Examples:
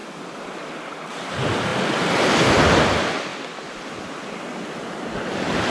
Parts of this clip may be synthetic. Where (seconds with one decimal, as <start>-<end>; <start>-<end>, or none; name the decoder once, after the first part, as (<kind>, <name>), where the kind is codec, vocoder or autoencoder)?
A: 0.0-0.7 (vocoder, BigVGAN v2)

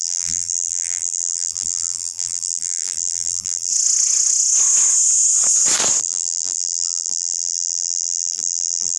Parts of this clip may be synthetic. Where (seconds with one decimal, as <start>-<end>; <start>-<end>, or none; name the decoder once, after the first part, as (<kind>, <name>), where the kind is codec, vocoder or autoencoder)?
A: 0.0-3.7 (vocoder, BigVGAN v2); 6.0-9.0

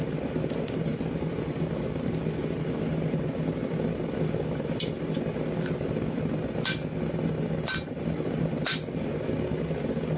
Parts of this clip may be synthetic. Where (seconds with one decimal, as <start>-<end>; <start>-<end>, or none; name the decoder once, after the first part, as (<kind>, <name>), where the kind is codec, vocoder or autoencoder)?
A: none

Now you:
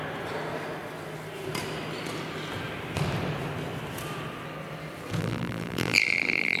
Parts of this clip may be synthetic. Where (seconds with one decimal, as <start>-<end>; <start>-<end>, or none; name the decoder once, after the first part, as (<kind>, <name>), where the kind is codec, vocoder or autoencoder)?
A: 5.2-6.6 (vocoder, BigVGAN v2)